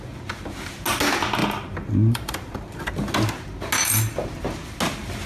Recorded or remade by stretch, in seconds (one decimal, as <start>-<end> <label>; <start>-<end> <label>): 0.0-1.4 recorded; 1.4-2.9 remade; 2.9-5.3 recorded